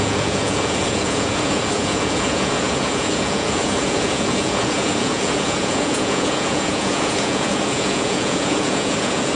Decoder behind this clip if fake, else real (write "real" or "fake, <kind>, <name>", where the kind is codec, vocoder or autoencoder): fake, vocoder, Vocos